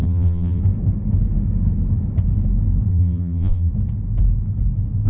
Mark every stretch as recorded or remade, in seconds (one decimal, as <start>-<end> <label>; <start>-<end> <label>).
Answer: 0.0-0.6 remade; 0.6-2.9 recorded; 2.9-3.7 remade; 3.7-5.1 recorded